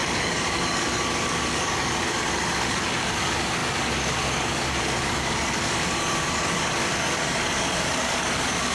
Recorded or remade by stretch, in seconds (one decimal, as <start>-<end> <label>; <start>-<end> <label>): 0.0-8.7 remade

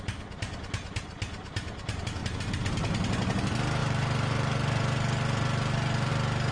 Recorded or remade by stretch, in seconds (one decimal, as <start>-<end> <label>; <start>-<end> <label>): 0.0-2.2 recorded; 2.2-2.8 remade; 2.8-3.8 recorded; 3.8-6.1 remade; 6.1-6.5 recorded